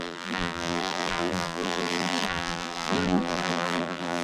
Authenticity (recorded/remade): remade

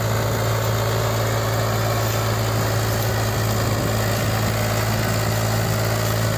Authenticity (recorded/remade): recorded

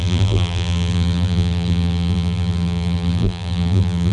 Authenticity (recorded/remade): remade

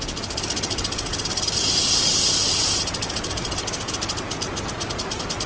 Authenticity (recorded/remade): recorded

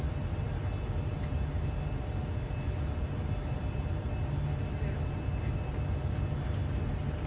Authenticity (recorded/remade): recorded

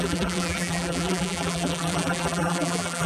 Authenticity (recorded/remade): remade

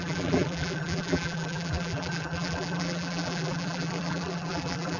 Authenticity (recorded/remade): remade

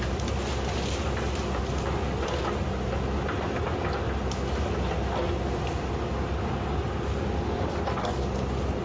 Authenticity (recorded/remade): recorded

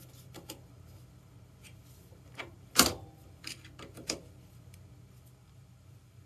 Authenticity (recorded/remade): remade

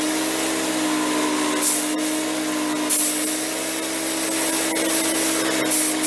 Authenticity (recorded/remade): recorded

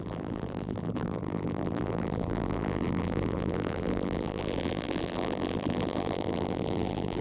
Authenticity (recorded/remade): remade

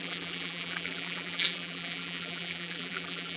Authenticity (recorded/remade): remade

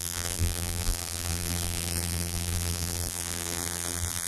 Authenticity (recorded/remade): remade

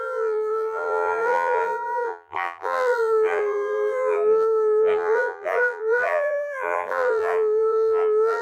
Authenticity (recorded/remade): remade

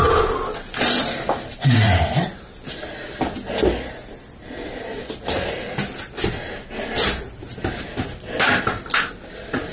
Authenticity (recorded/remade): recorded